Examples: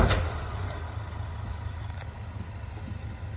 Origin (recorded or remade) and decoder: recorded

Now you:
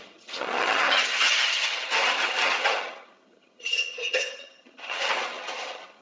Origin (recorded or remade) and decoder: remade, vocoder, HiFi-GAN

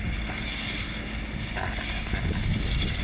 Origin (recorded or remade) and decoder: recorded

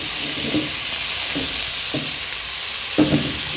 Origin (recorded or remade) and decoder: recorded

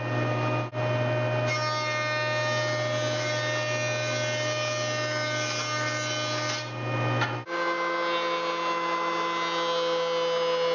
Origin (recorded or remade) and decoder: recorded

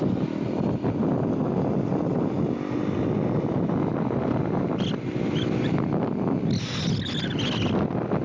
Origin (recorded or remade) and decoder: recorded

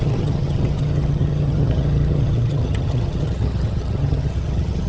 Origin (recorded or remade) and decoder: remade, vocoder, HiFi-GAN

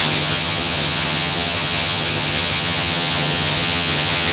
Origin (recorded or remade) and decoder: remade, vocoder, HiFi-GAN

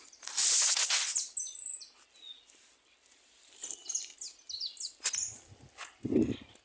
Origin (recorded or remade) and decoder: recorded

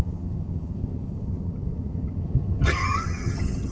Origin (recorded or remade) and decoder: remade, vocoder, HiFi-GAN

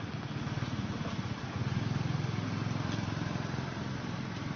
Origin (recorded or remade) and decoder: recorded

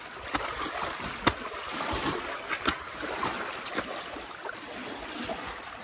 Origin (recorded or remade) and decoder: recorded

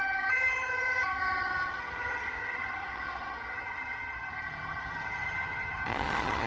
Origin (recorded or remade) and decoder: remade, vocoder, HiFi-GAN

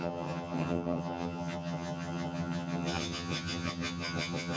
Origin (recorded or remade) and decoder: remade, vocoder, HiFi-GAN